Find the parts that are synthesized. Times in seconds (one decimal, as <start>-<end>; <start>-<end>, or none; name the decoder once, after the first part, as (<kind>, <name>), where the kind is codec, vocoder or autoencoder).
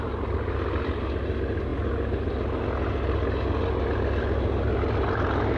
none